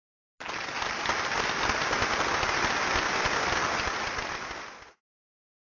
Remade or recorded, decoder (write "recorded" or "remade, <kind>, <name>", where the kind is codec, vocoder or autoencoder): recorded